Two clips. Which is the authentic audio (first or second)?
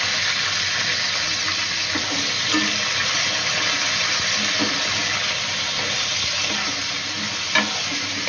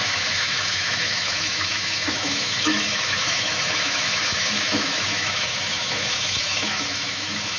first